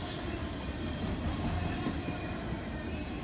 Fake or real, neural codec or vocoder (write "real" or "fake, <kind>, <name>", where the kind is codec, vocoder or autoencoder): fake, vocoder, BigVGAN v2